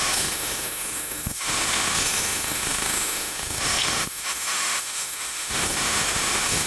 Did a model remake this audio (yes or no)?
yes